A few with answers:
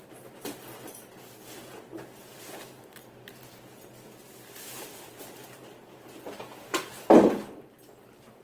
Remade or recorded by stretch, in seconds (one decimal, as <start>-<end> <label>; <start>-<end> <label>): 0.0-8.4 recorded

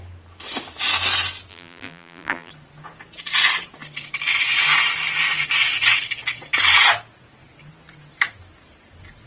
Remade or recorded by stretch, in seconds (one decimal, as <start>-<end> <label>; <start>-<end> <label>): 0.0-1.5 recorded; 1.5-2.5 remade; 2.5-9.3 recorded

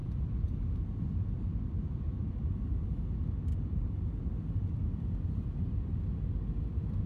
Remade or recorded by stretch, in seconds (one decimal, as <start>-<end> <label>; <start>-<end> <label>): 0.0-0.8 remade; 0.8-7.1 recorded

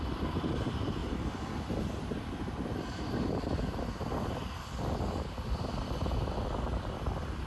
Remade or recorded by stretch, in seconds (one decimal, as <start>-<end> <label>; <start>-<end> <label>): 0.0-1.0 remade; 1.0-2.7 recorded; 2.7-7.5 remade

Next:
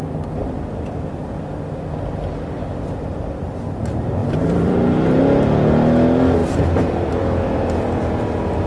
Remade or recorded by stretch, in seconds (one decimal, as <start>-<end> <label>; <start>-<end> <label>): 0.0-4.2 recorded; 4.2-5.2 remade; 5.2-6.4 recorded; 6.4-7.1 remade; 7.1-8.7 recorded